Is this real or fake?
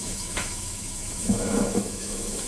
fake